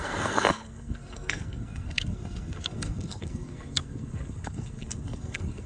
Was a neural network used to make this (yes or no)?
yes